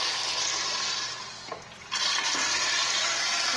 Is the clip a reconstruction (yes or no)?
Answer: no